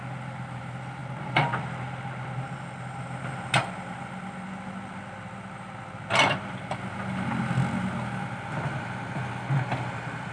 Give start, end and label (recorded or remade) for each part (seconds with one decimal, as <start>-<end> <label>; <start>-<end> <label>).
0.0-10.3 recorded